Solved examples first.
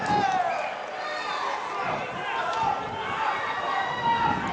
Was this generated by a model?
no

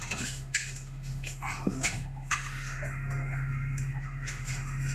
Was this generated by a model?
yes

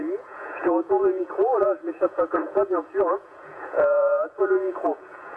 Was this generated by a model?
yes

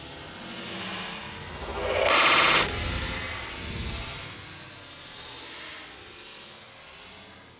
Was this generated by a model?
no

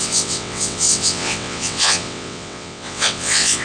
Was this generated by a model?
yes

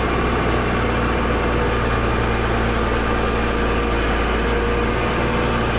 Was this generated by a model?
no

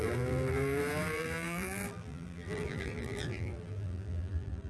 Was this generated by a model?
yes